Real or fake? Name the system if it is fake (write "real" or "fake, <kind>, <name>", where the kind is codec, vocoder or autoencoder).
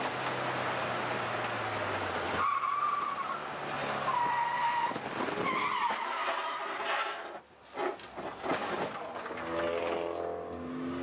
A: real